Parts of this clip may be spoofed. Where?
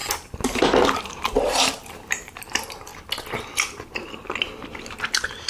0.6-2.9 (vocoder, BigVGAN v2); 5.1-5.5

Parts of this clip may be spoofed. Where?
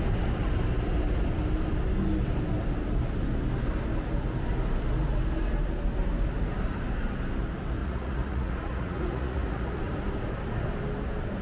7.8-9.8 (vocoder, Vocos)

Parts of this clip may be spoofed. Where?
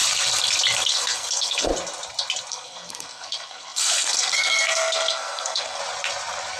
0.9-1.7 (codec, SNAC); 2.5-5.8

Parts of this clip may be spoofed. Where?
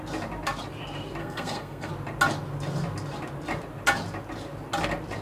1.2-1.9 (codec, SNAC)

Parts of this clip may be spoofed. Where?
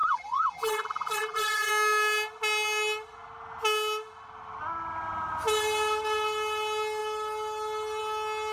0.0-1.7 (vocoder, BigVGAN v2)